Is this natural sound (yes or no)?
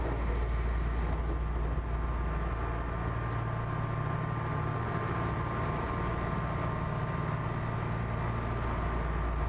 yes